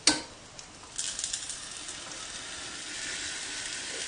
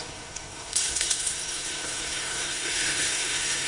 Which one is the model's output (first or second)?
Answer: second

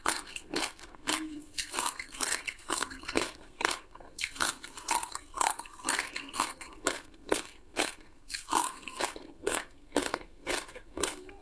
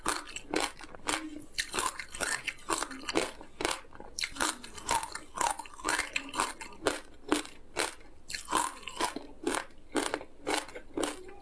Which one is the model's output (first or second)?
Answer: first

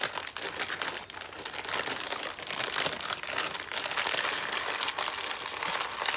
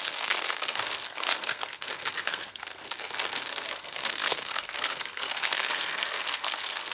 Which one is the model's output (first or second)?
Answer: second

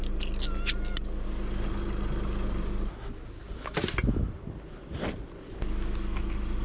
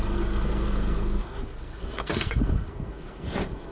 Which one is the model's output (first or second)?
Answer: second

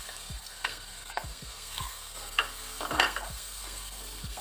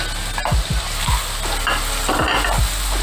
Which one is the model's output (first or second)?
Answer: first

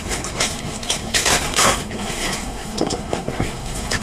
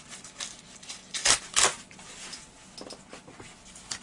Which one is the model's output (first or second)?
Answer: first